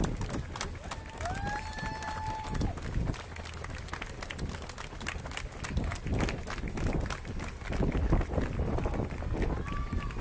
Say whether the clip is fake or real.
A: real